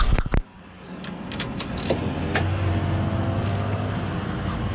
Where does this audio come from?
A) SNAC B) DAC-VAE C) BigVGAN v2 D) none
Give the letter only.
D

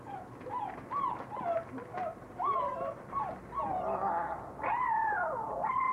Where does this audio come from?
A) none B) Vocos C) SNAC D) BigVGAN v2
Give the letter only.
D